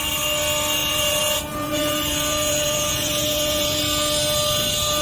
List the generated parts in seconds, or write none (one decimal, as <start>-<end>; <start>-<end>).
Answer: 0.8-3.8